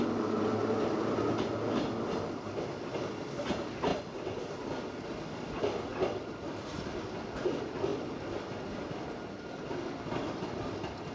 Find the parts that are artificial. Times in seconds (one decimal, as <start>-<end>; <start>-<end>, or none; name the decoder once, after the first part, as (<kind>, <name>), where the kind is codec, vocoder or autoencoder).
none